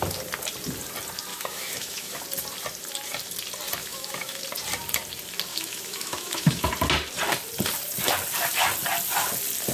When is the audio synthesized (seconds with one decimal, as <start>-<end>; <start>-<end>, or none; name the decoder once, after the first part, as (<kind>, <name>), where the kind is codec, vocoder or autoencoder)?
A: 1.3-2.2 (autoencoder, DAC-VAE); 3.8-4.4; 5.5-6.7